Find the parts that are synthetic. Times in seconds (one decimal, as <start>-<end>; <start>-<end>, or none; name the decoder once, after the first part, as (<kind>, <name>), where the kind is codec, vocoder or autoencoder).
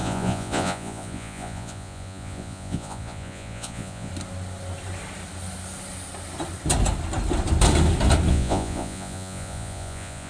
0.0-4.1 (vocoder, Vocos); 8.3-10.3